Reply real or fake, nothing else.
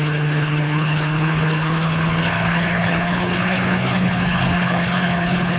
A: fake